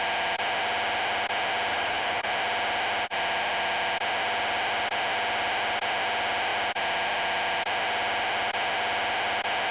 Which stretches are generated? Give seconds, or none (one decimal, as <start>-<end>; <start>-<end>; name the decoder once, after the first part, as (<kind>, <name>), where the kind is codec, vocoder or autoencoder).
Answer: 1.7-2.3 (codec, HILCodec)